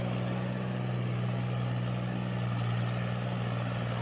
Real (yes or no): yes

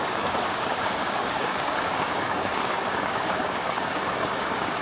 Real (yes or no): no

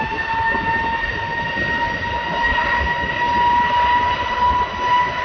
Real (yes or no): yes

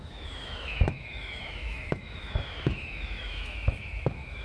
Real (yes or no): no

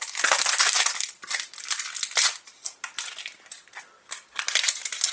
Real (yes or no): yes